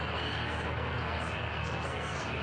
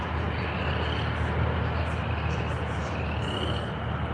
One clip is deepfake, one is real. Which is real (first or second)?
second